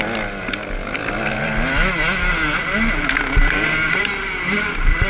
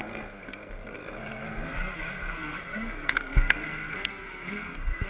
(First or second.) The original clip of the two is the first